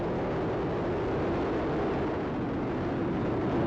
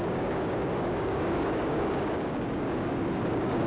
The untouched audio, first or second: first